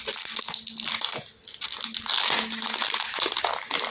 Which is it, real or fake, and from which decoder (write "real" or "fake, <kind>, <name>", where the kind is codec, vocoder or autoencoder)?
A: real